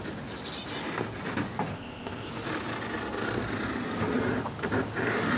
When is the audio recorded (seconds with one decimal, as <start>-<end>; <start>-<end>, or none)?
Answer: 0.0-1.7; 2.3-5.4